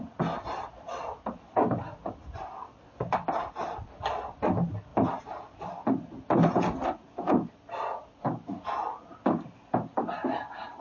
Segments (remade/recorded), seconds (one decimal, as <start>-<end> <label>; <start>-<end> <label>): 0.0-10.8 recorded